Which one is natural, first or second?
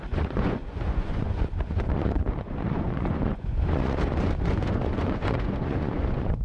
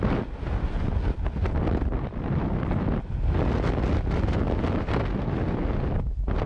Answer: second